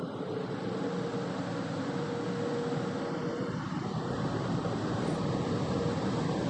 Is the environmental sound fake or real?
real